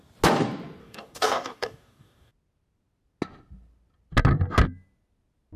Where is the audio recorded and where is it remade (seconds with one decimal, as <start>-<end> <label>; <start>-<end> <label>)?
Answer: 0.0-0.8 recorded; 0.8-2.3 remade; 2.3-5.6 recorded